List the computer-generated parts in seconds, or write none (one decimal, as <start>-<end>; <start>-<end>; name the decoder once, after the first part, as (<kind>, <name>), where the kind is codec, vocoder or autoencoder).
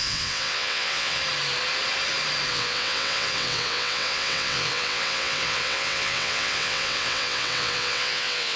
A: 0.0-1.2 (vocoder, WaveNeXt); 2.5-8.6